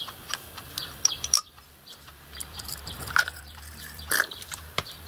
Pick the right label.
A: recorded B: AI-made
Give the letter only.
B